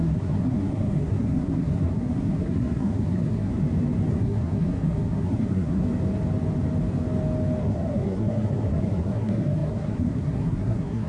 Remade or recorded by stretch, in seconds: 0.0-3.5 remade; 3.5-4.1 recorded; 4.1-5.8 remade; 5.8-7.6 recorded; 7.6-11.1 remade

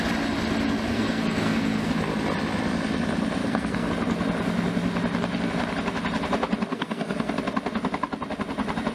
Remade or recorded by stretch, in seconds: 0.0-0.9 recorded; 0.9-1.9 remade; 1.9-3.4 recorded; 3.4-3.9 remade; 3.9-6.7 recorded; 6.7-7.3 remade; 7.3-8.9 recorded

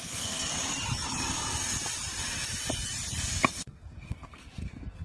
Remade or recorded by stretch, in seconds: 0.0-0.5 remade; 0.5-3.5 recorded; 3.5-5.0 remade

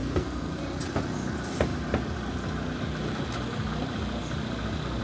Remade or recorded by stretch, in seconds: 0.0-0.6 remade; 0.6-5.0 recorded

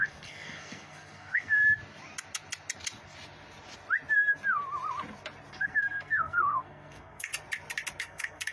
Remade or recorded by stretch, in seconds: 0.0-1.6 remade; 1.6-5.5 recorded; 5.5-7.3 remade; 7.3-8.0 recorded; 8.0-8.5 remade

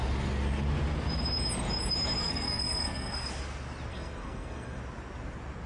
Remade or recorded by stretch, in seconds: 0.0-2.2 recorded; 2.2-3.3 remade; 3.3-3.9 recorded; 3.9-4.8 remade; 4.8-5.7 recorded

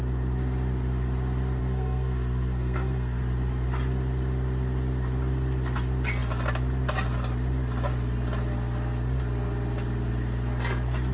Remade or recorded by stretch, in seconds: 0.0-1.6 recorded; 1.6-3.2 remade; 3.2-11.1 recorded